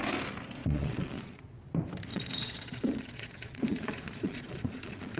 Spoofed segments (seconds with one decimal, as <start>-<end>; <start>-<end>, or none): 0.6-1.5; 2.1-5.2